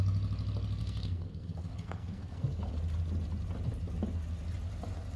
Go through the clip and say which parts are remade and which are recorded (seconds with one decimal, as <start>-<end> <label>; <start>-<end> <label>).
0.0-0.8 recorded; 0.8-2.7 remade; 2.7-5.2 recorded

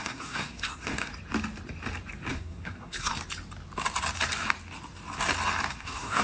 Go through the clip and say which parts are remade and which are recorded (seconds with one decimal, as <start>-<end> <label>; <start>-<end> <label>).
0.0-1.1 remade; 1.1-2.3 recorded; 2.3-3.1 remade; 3.1-5.7 recorded; 5.7-6.2 remade

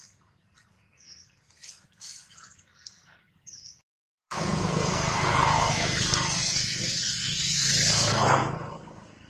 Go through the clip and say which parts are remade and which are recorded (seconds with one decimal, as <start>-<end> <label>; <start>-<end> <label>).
0.0-9.3 remade

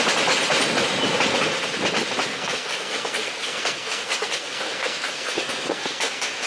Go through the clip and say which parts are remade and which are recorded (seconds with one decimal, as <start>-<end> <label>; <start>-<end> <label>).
0.0-2.3 recorded; 2.3-6.5 remade